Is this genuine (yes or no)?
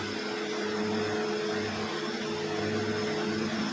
yes